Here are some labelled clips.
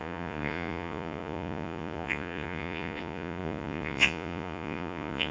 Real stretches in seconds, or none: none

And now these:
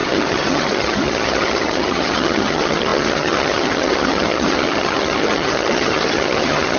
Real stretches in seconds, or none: none

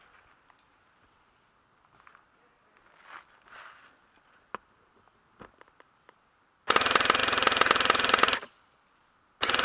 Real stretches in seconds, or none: 0.0-9.6

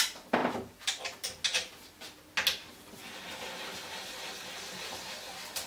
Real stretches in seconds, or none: 0.0-5.7

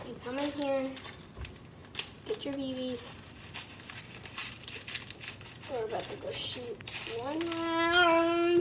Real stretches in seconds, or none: 0.0-8.6

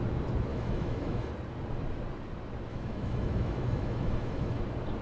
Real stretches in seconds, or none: 0.0-0.5; 1.3-2.7; 4.6-5.0

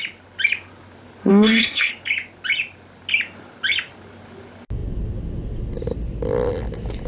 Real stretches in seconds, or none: 0.0-1.3; 1.9-7.1